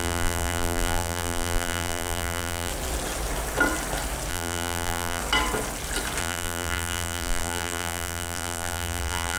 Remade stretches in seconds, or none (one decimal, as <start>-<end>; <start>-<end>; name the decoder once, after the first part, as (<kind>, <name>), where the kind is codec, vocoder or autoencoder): 0.0-2.7 (vocoder, BigVGAN v2); 4.3-5.2; 6.2-9.4